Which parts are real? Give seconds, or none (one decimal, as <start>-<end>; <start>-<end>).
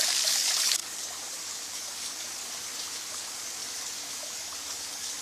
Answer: 2.4-3.1; 3.6-4.1